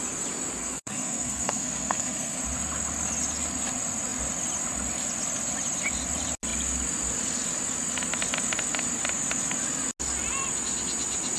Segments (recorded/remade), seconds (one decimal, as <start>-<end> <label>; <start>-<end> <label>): 0.0-0.6 recorded; 0.6-2.4 remade; 2.4-11.4 recorded